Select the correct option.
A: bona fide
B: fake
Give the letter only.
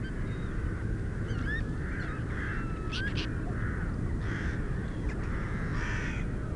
A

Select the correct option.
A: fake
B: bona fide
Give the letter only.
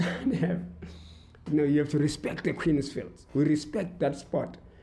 B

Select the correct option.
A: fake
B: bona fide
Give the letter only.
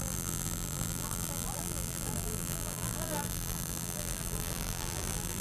A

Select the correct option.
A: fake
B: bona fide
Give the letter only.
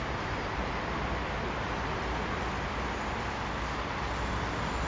B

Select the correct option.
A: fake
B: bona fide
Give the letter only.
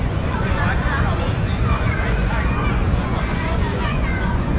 A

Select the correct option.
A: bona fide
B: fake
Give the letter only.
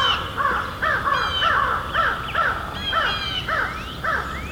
A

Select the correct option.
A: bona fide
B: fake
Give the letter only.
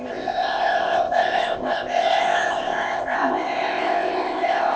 B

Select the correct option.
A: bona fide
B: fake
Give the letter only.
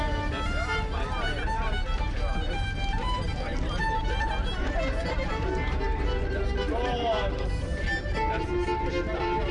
B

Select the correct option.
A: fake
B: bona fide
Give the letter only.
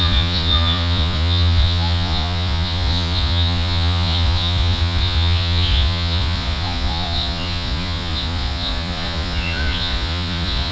A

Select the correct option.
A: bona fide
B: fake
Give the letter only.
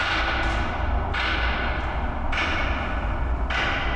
A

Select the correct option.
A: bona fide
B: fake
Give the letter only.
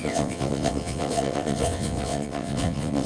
B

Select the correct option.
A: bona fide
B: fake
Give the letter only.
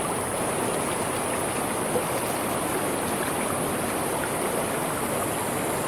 A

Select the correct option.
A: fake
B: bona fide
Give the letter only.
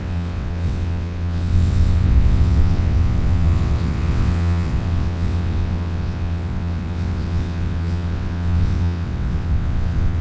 A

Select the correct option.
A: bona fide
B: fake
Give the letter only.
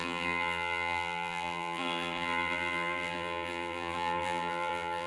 B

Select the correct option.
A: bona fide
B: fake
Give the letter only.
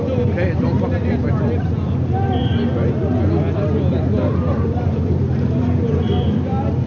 A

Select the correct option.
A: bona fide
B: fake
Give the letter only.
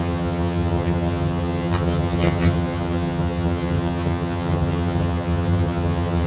B